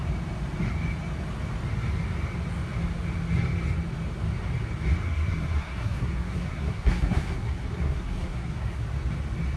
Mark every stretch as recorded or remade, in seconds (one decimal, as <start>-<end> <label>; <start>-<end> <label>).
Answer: 0.0-5.0 recorded; 5.0-8.8 remade; 8.8-9.6 recorded